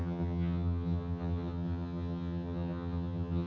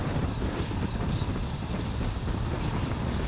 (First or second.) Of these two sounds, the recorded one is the second